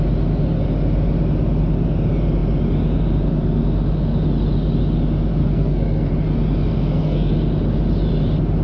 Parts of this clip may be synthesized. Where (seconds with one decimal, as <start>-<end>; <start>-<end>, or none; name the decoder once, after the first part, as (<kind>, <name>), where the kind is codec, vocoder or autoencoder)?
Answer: 5.4-6.1 (codec, SNAC); 6.7-7.3